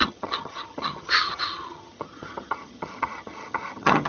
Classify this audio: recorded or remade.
remade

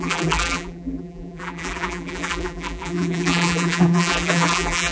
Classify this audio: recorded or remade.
remade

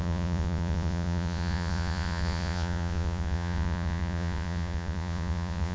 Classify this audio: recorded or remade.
remade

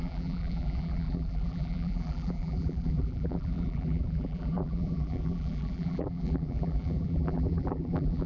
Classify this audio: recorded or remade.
remade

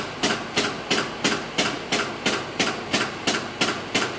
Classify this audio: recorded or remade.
recorded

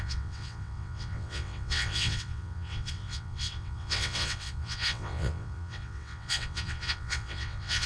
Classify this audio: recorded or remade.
remade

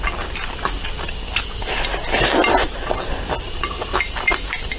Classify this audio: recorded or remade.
recorded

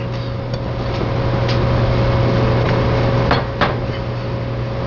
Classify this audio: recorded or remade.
recorded